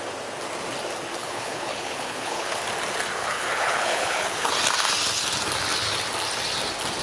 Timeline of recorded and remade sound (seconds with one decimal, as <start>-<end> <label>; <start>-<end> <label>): 0.0-1.2 recorded; 1.2-2.6 remade; 2.6-3.2 recorded; 3.2-4.5 remade; 4.5-7.0 recorded